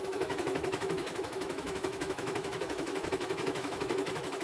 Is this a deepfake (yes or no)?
yes